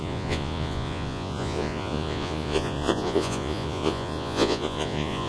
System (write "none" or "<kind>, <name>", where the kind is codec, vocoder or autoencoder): vocoder, Vocos